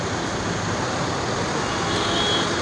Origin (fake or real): real